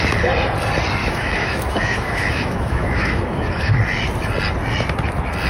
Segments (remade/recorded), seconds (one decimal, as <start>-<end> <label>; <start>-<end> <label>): 0.0-1.0 recorded; 1.0-3.8 remade; 3.8-5.5 recorded